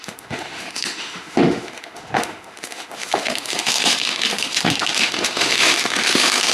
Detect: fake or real fake